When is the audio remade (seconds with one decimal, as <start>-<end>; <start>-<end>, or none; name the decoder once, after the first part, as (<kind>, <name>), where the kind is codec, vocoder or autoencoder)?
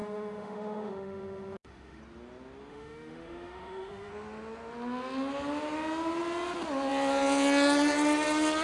0.0-2.0 (autoencoder, DAC-VAE); 2.7-4.1